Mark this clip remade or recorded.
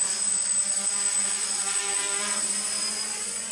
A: remade